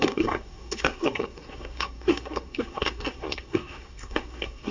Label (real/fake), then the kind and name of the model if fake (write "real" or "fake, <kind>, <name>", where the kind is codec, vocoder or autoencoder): fake, codec, SNAC